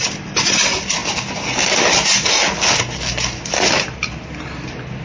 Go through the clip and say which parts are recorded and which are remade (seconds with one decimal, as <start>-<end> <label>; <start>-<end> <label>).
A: 0.0-5.0 recorded